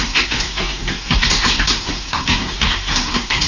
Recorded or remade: remade